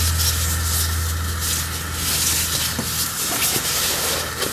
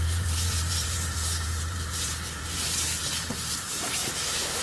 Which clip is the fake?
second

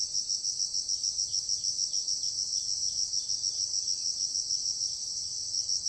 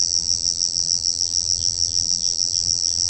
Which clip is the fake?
second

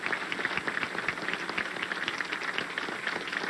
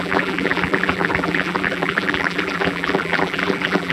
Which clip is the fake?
second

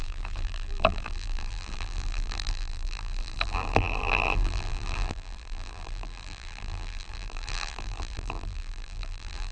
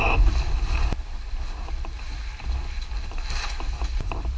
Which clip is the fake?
first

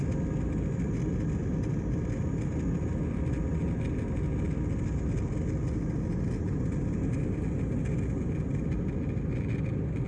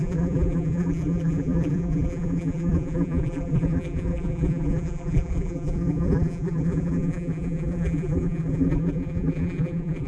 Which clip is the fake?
second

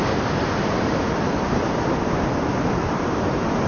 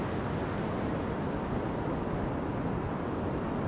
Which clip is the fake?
first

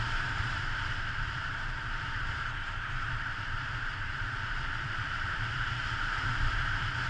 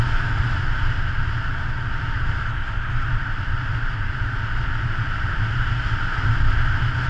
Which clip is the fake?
first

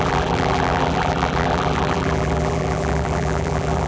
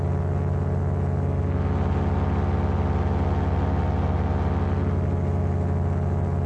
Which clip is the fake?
first